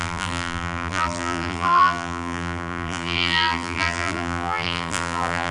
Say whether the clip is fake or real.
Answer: fake